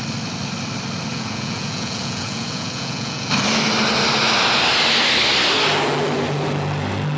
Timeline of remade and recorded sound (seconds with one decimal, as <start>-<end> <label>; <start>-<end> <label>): 0.0-1.1 recorded; 1.1-3.3 remade; 3.3-7.2 recorded